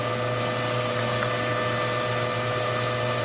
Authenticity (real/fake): real